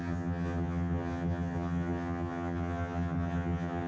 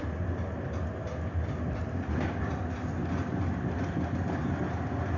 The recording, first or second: second